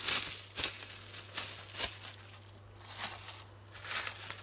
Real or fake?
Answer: real